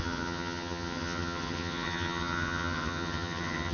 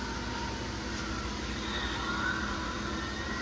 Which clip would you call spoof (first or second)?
first